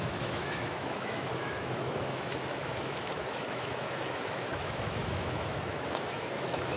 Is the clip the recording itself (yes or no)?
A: no